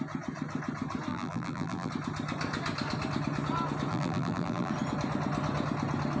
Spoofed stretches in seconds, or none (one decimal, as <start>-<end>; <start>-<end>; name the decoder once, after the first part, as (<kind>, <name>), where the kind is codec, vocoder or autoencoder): 1.1-1.9 (vocoder, BigVGAN v2); 3.9-4.7